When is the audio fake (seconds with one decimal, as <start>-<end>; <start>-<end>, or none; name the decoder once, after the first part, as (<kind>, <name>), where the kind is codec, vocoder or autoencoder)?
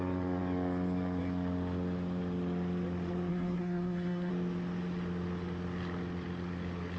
3.3-4.3 (codec, SNAC)